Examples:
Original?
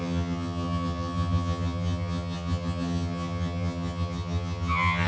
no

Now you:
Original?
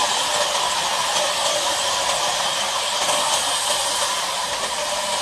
yes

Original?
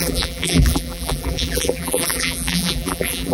no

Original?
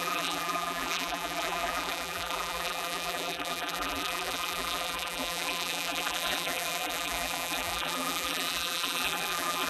no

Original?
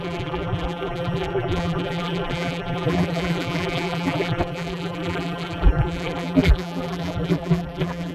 no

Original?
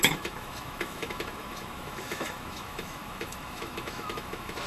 no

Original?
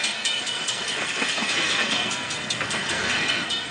no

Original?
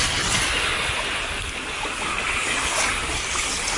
yes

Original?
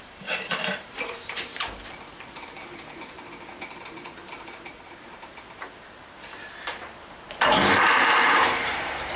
no